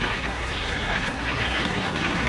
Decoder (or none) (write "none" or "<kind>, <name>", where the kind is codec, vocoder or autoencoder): codec, SNAC